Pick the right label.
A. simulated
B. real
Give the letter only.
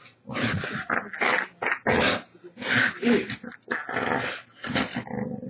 B